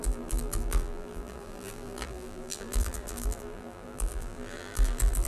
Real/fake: fake